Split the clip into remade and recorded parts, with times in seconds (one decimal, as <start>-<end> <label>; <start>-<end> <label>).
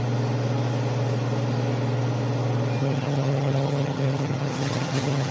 0.0-2.8 recorded; 2.8-5.3 remade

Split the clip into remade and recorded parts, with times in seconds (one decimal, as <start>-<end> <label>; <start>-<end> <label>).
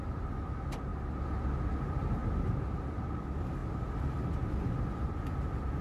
0.0-0.9 remade; 0.9-1.4 recorded; 1.4-2.2 remade; 2.2-3.2 recorded; 3.2-3.6 remade; 3.6-4.8 recorded; 4.8-5.8 remade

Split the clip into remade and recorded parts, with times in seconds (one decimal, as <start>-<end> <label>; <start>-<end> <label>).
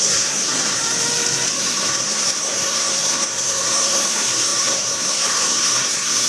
0.0-0.8 remade; 0.8-1.6 recorded; 1.6-6.3 remade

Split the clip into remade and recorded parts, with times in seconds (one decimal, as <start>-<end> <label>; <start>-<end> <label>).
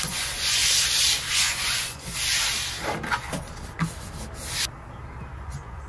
0.0-0.6 remade; 0.6-1.3 recorded; 1.3-2.1 remade; 2.1-5.4 recorded; 5.4-5.9 remade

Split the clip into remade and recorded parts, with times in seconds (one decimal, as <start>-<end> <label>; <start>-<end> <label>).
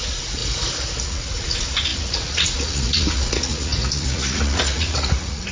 0.0-0.4 remade; 0.4-1.0 recorded; 1.0-5.5 remade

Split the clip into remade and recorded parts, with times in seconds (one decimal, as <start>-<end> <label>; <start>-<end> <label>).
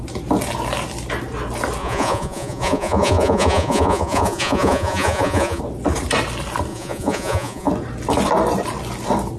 0.0-1.8 recorded; 1.8-5.6 remade; 5.6-6.7 recorded; 6.7-7.7 remade; 7.7-9.4 recorded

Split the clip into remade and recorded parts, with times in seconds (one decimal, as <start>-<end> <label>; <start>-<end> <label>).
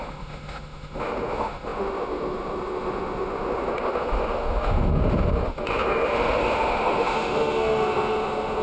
0.0-8.6 remade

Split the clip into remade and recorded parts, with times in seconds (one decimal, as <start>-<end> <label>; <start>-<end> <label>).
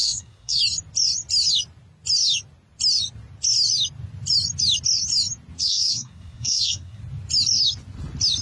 0.0-0.6 remade; 0.6-5.6 recorded; 5.6-7.0 remade; 7.0-8.4 recorded